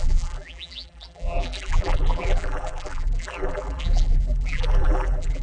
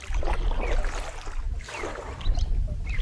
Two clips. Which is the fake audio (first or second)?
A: first